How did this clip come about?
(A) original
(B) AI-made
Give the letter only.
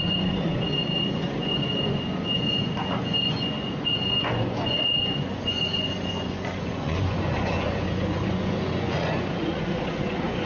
B